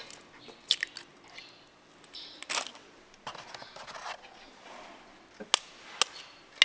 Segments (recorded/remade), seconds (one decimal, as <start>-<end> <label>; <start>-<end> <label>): 0.0-6.6 recorded